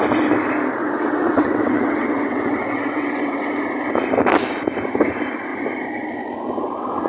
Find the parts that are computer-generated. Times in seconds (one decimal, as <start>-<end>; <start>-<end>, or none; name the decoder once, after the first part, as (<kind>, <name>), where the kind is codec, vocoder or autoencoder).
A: 0.8-3.5 (vocoder, WaveNeXt)

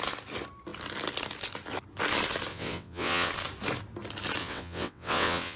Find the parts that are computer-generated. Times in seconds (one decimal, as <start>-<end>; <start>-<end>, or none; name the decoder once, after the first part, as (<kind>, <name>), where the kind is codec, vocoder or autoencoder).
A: 2.5-3.3 (vocoder, WaveNeXt); 4.4-5.6

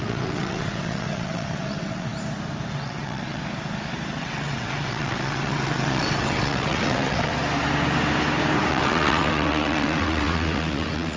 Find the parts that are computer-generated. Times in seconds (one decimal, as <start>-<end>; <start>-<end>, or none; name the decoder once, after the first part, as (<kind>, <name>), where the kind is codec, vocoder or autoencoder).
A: 0.0-2.1 (vocoder, WaveNeXt); 2.7-3.4; 4.2-7.3; 8.7-11.2

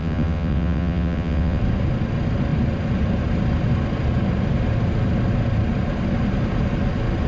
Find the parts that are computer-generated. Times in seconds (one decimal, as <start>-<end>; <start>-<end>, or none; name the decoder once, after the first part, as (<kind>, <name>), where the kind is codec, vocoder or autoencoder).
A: 0.0-1.6 (vocoder, WaveNeXt)

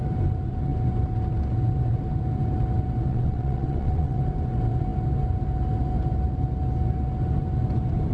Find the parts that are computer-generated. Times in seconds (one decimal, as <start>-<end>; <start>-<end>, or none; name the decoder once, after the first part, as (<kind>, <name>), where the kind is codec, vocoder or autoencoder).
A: 3.1-4.2 (vocoder, WaveNeXt)